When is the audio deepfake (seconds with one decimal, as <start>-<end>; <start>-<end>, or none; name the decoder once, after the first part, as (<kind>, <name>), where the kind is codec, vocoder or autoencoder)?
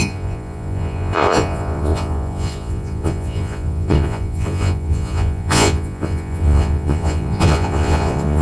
0.0-8.4 (vocoder, Vocos)